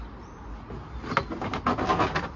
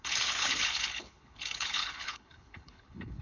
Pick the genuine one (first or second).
first